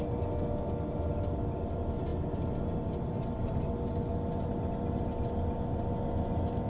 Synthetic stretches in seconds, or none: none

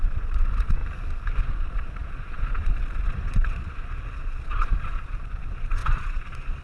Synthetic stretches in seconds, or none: 0.0-0.8; 1.4-6.6